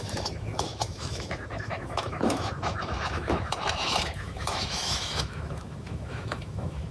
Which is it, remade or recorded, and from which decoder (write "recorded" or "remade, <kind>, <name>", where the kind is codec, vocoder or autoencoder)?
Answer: remade, autoencoder, DAC-VAE